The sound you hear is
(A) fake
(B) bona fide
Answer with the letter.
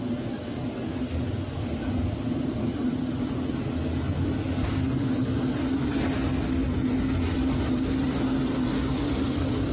B